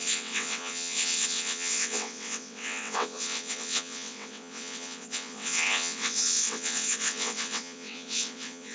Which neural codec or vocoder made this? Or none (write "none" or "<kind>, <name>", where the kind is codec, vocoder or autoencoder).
vocoder, WaveNeXt